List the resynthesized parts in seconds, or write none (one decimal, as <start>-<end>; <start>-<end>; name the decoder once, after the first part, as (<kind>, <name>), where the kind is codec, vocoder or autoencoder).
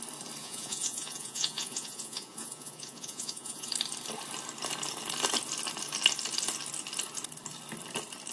0.4-3.7 (vocoder, Vocos)